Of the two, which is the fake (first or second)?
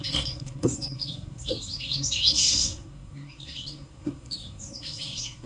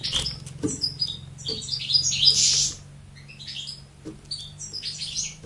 first